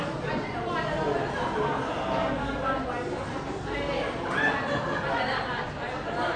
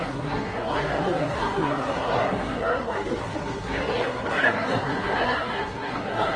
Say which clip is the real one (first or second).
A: first